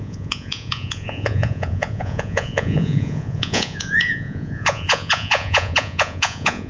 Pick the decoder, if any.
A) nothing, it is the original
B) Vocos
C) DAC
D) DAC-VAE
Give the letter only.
B